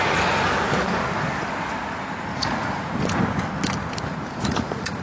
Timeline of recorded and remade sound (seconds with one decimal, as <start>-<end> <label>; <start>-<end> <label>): 0.0-2.3 recorded; 2.3-2.9 remade; 2.9-4.1 recorded; 4.1-5.0 remade